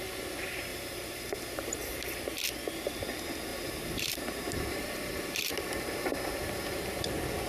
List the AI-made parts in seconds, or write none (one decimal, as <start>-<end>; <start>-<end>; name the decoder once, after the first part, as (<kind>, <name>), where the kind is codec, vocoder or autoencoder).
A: 0.7-2.4 (vocoder, BigVGAN v2); 3.5-7.1